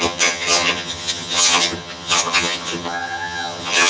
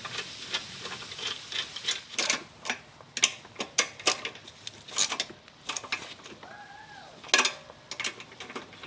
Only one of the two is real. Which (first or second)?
second